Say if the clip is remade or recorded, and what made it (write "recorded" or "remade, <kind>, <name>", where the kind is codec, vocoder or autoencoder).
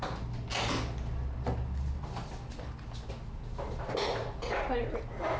recorded